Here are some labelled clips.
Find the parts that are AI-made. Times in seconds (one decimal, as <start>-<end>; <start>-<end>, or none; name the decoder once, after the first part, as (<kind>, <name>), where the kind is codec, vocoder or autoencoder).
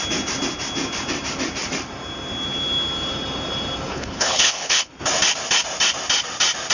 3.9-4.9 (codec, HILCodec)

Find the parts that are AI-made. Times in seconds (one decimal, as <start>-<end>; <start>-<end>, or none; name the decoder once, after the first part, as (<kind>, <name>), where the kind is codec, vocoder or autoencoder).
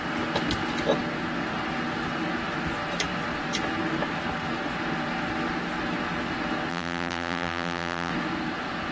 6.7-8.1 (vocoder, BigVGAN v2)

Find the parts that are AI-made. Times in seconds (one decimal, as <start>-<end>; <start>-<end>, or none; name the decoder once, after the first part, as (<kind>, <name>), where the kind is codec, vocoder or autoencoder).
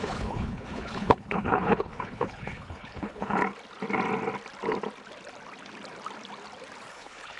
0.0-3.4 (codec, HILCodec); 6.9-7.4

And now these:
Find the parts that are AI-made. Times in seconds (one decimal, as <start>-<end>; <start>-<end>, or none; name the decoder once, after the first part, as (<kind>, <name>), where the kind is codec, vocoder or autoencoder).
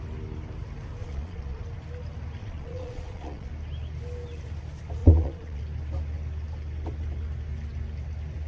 1.0-1.6 (vocoder, Vocos); 2.4-3.5; 5.0-5.6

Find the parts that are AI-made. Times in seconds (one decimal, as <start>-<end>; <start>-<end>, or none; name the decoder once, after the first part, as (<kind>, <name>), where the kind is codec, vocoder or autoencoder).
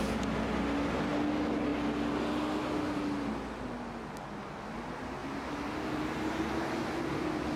5.2-6.4 (vocoder, BigVGAN v2)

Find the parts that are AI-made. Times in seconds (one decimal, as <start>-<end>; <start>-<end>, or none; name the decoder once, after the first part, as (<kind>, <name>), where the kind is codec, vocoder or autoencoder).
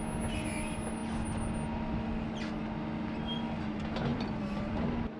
4.1-4.8 (vocoder, BigVGAN v2)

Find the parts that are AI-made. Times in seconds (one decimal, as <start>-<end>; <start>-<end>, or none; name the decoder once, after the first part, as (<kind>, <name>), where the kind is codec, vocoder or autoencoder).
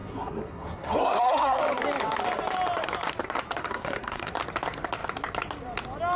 0.0-1.6 (codec, SNAC); 3.6-4.3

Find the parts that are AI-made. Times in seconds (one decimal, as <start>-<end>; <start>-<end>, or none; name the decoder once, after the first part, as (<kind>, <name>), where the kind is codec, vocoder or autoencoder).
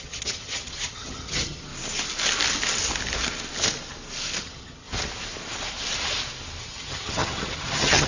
0.0-1.7 (vocoder, HiFi-GAN); 4.4-4.9; 6.6-8.1